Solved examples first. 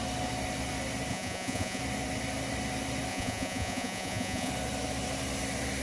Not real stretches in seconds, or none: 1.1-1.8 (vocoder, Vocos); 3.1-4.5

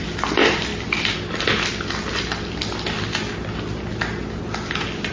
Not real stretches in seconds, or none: none

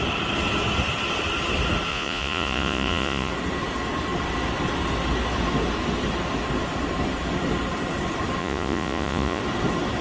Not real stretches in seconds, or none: 1.9-3.3 (vocoder, Vocos); 8.4-9.4

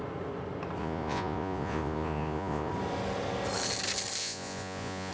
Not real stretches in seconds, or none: 0.8-2.7 (vocoder, Vocos); 4.2-5.1

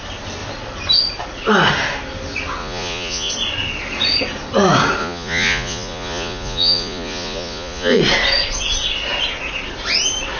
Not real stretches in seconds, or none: 2.6-3.3 (vocoder, Vocos); 5.0-8.0

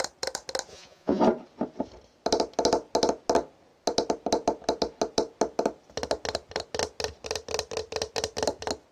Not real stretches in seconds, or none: 0.7-1.2 (vocoder, Vocos)